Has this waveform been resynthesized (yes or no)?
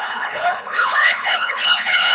yes